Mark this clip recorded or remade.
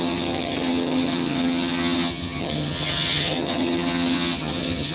remade